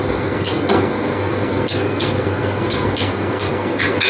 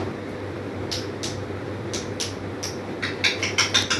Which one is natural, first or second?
second